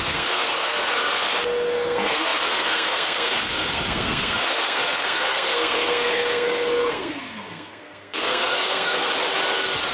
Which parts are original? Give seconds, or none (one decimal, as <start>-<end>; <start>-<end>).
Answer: 9.1-9.9